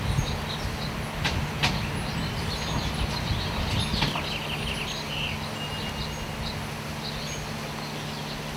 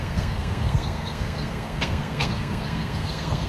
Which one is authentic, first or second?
first